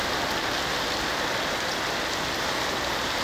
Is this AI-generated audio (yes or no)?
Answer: no